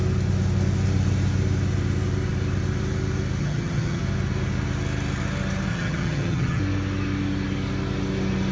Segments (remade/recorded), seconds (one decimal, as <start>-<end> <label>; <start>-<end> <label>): 0.0-3.4 recorded; 3.4-4.0 remade; 4.0-5.7 recorded; 5.7-6.6 remade; 6.6-8.5 recorded